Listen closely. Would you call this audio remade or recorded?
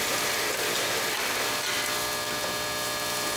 recorded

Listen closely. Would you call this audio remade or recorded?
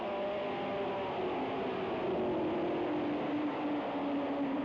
recorded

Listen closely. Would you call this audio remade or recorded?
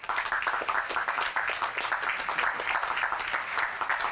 recorded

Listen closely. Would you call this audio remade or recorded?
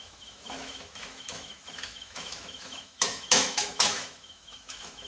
remade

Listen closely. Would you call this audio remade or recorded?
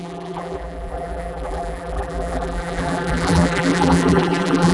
remade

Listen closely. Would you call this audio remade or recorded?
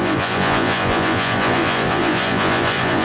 remade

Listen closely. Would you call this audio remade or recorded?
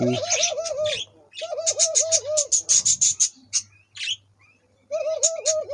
recorded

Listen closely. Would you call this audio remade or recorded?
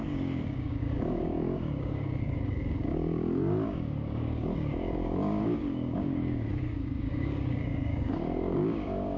remade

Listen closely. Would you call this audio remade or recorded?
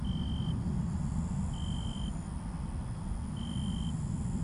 recorded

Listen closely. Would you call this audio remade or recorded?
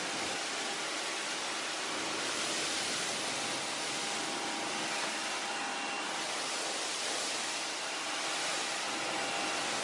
recorded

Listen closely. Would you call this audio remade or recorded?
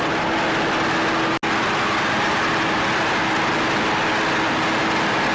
recorded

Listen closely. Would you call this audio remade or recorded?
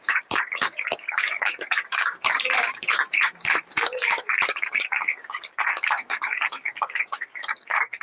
remade